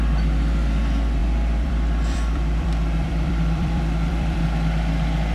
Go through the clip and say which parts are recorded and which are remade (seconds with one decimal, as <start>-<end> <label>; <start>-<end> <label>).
0.0-1.2 recorded; 1.2-4.4 remade; 4.4-5.3 recorded